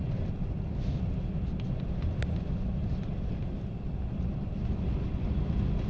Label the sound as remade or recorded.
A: recorded